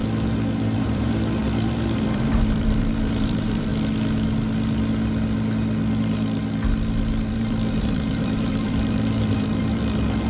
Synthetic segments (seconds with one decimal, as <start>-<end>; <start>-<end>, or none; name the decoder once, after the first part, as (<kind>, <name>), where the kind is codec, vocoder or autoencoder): 0.8-3.7 (vocoder, BigVGAN v2); 7.3-10.3